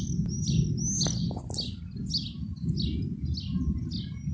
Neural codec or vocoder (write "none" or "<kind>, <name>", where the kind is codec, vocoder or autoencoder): none